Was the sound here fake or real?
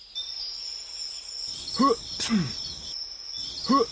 real